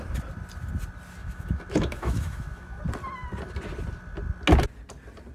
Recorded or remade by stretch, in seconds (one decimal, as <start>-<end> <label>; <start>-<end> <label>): 0.0-1.2 recorded; 1.2-2.8 remade; 2.8-5.3 recorded